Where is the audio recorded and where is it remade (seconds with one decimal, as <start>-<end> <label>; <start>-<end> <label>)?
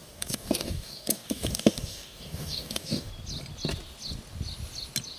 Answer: 0.0-3.1 remade; 3.1-5.2 recorded